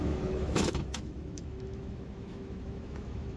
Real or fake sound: fake